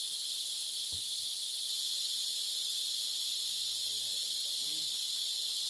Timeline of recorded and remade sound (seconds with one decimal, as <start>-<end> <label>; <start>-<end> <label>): 0.0-5.7 recorded